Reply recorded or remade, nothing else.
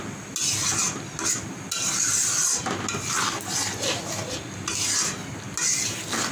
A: recorded